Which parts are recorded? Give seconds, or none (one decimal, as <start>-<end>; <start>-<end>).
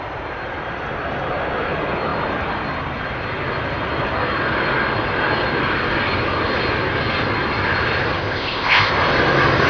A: 0.0-8.2; 8.9-9.7